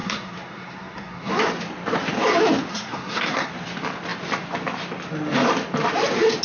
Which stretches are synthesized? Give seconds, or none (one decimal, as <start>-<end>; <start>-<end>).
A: 0.0-1.3; 2.7-3.5